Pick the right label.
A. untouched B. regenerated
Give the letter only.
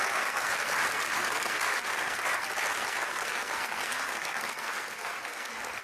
B